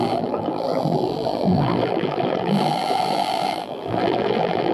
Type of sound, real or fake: fake